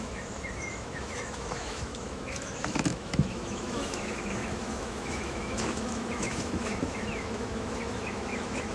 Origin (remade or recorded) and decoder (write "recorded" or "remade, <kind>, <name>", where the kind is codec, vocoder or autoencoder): remade, autoencoder, DAC-VAE